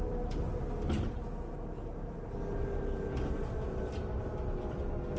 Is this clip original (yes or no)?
yes